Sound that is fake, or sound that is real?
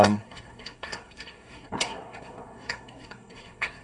fake